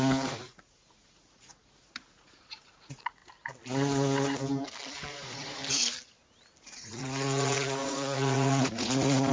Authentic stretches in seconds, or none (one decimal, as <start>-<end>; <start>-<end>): 3.2-5.1; 5.6-6.6